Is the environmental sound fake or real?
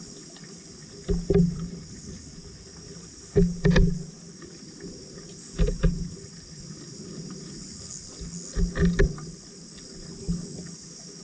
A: real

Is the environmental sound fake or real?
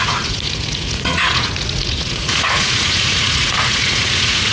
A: fake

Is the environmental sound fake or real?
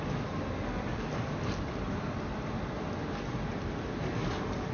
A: real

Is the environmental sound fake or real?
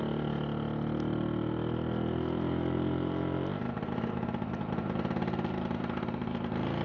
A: real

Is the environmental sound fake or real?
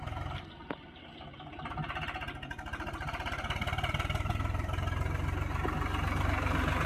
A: real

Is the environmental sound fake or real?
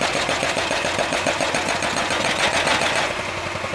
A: fake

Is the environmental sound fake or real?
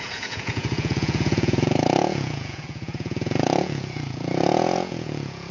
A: fake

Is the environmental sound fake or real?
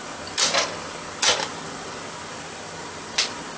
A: real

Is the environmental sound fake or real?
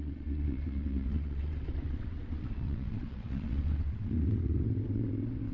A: fake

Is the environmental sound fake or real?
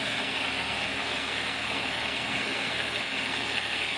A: fake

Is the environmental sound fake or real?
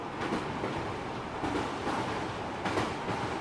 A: real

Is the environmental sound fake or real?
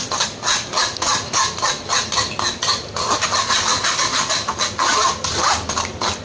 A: real